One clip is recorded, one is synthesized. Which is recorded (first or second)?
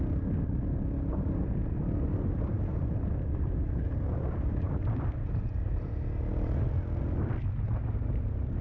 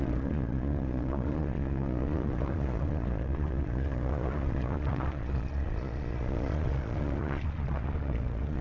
first